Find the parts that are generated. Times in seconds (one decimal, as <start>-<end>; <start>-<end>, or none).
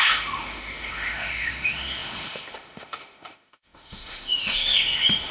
0.0-5.3